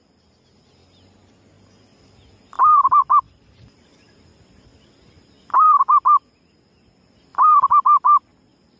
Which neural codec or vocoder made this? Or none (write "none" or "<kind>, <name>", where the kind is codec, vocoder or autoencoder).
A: none